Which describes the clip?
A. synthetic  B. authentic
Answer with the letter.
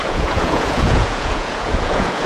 A